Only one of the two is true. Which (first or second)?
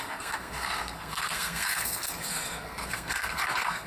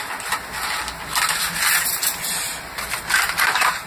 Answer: second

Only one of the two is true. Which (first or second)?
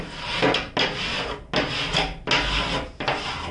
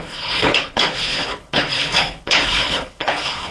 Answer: first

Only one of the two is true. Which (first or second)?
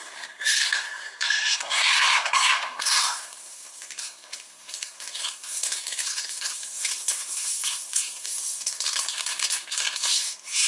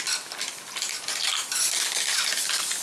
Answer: second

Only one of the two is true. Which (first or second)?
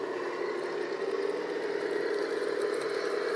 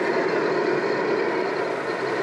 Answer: first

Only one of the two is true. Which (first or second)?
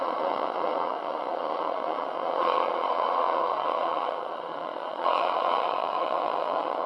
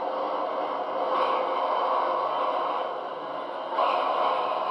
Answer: second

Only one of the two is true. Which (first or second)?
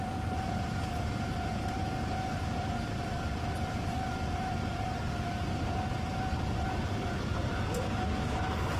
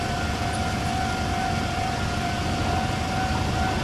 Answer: second